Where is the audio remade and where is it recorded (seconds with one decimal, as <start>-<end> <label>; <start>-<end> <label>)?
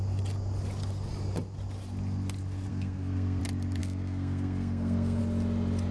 0.0-2.7 recorded; 2.7-3.4 remade; 3.4-3.8 recorded; 3.8-5.2 remade; 5.2-5.9 recorded